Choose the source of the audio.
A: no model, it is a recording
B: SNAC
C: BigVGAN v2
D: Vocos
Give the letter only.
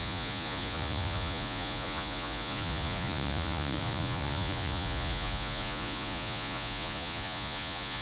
D